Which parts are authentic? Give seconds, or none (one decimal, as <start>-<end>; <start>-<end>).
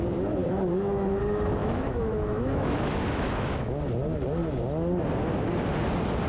0.0-0.4; 1.2-1.6; 3.7-6.3